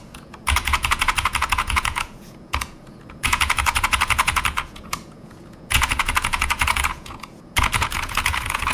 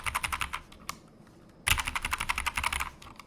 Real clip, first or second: second